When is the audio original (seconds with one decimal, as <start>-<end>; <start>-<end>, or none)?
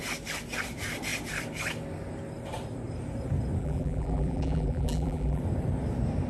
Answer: 0.0-3.6; 5.4-6.3